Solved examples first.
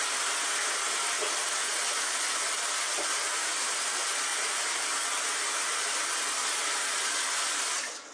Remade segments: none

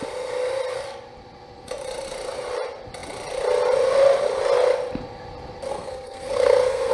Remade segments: 5.7-6.9 (codec, SNAC)

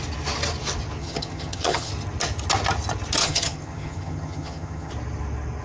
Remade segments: 1.0-1.9 (vocoder, HiFi-GAN); 3.2-4.9

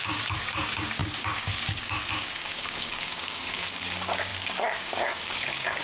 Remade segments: 0.0-5.8 (codec, DAC)

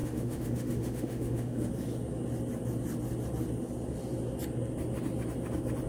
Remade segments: 0.0-1.7 (autoencoder, DAC-VAE)

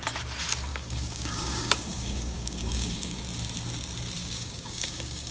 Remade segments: 0.7-3.2 (codec, DAC); 4.2-5.3

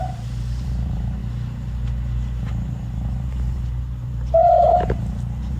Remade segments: 0.0-1.2 (vocoder, BigVGAN v2); 2.5-5.6

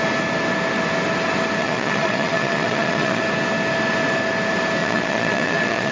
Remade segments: 1.6-3.2 (vocoder, Vocos); 4.8-5.9